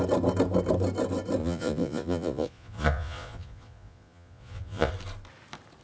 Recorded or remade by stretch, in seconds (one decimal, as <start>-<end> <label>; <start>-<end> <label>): 0.0-1.4 recorded; 1.4-4.9 remade; 4.9-5.8 recorded